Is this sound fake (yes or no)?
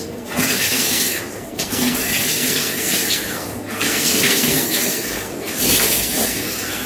yes